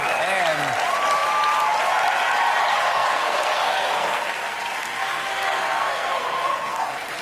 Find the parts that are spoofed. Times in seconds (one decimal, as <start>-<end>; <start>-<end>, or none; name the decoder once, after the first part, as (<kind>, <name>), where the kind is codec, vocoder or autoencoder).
2.7-7.2 (codec, SNAC)

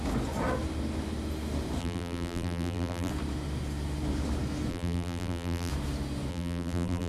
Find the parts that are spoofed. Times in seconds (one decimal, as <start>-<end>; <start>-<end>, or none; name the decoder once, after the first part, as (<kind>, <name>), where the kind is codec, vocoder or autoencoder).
1.8-3.1 (vocoder, BigVGAN v2); 4.7-5.7; 6.3-7.1

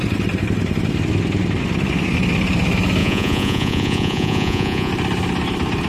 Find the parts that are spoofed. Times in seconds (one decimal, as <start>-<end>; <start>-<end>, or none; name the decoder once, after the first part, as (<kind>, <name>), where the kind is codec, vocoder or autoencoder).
3.0-4.9 (vocoder, Vocos)

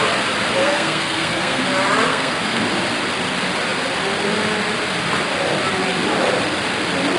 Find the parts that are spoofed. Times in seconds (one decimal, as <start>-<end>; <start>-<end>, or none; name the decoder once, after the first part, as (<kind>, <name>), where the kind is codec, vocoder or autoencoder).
0.6-1.6 (codec, SNAC); 2.1-2.6

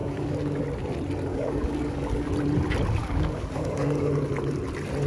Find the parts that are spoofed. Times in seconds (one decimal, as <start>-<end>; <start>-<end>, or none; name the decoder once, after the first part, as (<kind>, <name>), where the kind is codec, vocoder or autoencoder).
0.0-0.6 (codec, DAC); 1.3-2.3; 3.0-4.1

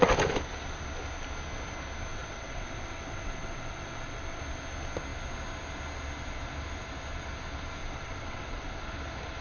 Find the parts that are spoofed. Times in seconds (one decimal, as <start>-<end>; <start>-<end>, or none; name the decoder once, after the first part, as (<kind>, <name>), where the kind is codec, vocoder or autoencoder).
2.1-4.4 (vocoder, WaveNeXt); 7.8-8.9

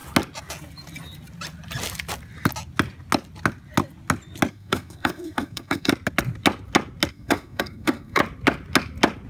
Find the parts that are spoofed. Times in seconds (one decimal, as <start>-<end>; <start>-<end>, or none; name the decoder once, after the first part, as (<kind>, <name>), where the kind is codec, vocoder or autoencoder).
4.5-5.9 (codec, SNAC); 7.1-8.2